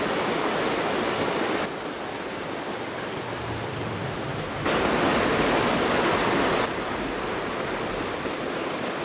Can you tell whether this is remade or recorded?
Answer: recorded